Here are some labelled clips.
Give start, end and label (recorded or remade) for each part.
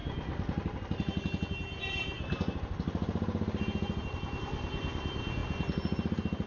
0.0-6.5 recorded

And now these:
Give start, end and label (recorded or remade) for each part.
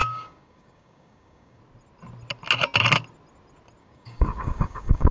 0.0-1.6 remade; 1.6-3.8 recorded; 3.8-5.1 remade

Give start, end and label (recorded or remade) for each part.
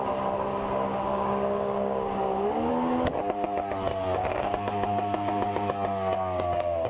0.0-1.1 recorded; 1.1-2.7 remade; 2.7-4.2 recorded; 4.2-6.9 remade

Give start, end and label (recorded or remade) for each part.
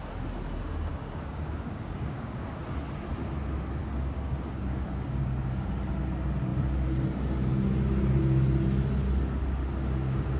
0.0-0.9 recorded; 0.9-2.6 remade; 2.6-3.8 recorded; 3.8-5.7 remade; 5.7-9.6 recorded; 9.6-10.4 remade